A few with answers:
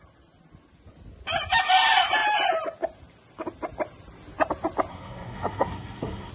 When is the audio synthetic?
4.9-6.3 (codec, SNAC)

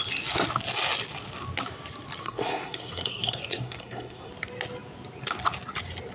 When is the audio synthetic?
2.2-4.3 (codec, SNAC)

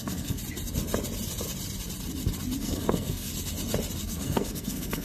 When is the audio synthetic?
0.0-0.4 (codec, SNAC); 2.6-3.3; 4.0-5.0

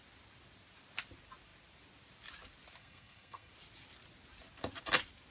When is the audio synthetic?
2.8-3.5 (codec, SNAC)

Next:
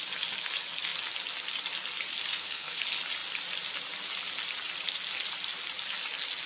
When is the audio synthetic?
2.3-2.8 (codec, SNAC)

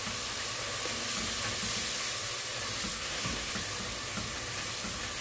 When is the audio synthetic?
2.9-3.5 (codec, SNAC)